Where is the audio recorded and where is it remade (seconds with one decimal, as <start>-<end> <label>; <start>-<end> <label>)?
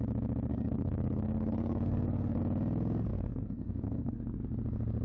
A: 0.0-0.5 recorded; 0.5-2.4 remade; 2.4-3.1 recorded; 3.1-4.4 remade; 4.4-5.0 recorded